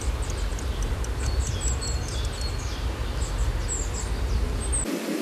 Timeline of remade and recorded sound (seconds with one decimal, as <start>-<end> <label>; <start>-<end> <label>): 0.0-0.5 recorded; 0.5-1.5 remade; 1.5-5.2 recorded